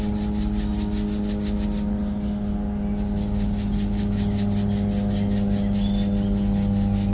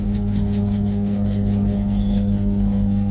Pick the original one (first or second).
first